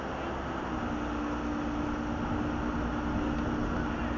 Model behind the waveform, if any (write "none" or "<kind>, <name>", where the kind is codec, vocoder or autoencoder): none